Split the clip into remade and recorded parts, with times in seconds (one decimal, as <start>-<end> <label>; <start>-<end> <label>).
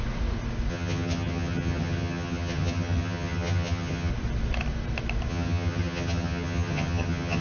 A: 0.0-0.7 recorded; 0.7-4.1 remade; 4.1-5.3 recorded; 5.3-7.4 remade